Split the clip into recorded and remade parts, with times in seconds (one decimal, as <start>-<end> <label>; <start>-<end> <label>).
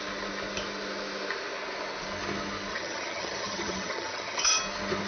0.0-2.7 recorded; 2.7-4.6 remade; 4.6-5.1 recorded